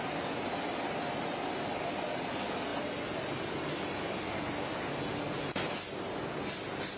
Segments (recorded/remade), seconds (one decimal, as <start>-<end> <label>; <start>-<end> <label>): 0.0-7.0 recorded